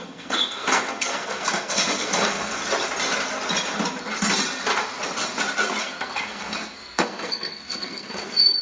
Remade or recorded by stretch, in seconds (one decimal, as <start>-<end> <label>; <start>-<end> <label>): 0.0-2.6 remade; 2.6-5.8 recorded; 5.8-8.6 remade